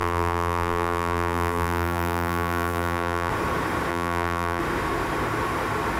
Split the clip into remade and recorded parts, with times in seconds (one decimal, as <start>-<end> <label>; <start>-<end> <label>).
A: 0.0-3.3 remade; 3.3-3.9 recorded; 3.9-4.6 remade; 4.6-6.0 recorded